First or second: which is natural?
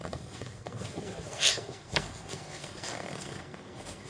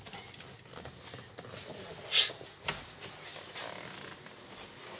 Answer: second